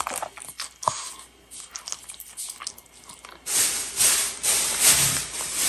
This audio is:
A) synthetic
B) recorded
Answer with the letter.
B